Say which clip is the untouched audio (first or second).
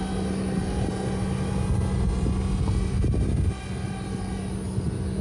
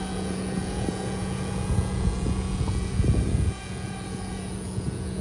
first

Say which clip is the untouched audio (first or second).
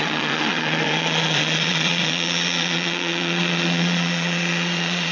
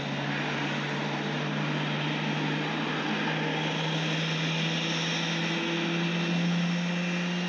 second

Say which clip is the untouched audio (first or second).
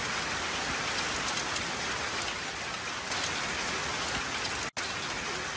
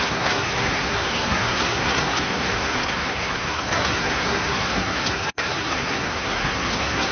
first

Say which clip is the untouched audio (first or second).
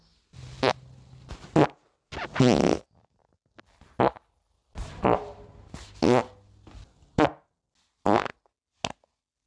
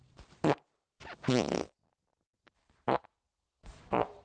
first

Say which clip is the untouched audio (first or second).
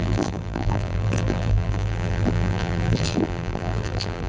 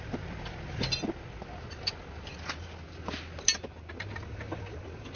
second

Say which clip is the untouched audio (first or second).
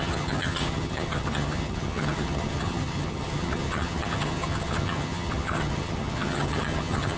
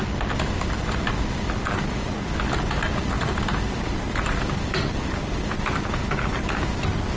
second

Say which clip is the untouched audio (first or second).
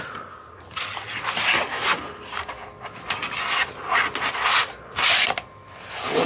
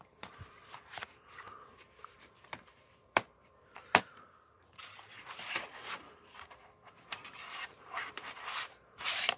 first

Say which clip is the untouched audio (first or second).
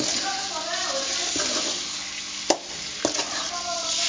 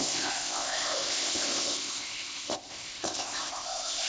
first